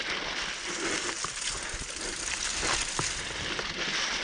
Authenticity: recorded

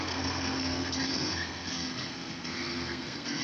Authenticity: remade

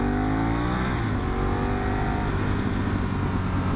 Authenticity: recorded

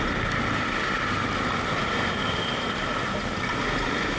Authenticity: recorded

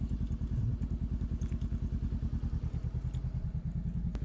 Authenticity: recorded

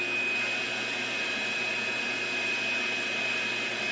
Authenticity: recorded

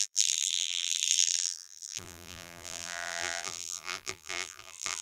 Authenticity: remade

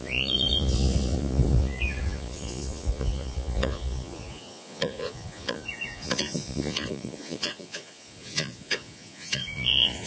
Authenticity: remade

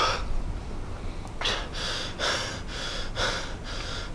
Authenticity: recorded